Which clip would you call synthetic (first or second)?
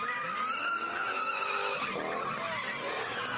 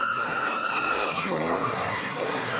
second